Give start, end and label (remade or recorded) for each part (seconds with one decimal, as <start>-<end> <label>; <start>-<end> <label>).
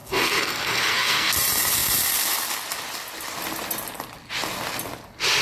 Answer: 0.0-1.3 remade; 1.3-5.4 recorded